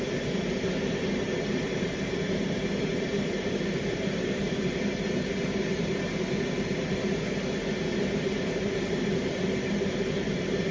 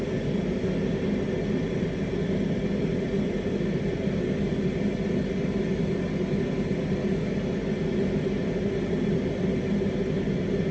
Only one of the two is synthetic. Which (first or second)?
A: first